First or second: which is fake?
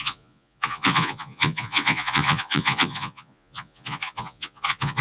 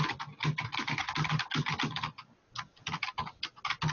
first